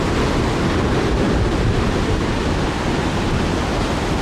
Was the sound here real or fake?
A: real